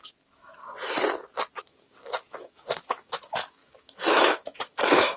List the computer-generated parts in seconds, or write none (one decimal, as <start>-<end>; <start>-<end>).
0.0-0.6; 1.6-5.2